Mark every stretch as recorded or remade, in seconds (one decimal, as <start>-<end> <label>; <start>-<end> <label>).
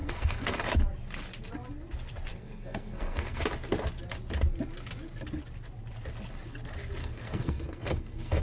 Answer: 0.0-0.7 remade; 0.7-2.3 recorded; 2.3-3.4 remade; 3.4-7.0 recorded; 7.0-8.4 remade